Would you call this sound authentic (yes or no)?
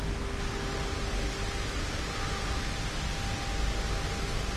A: yes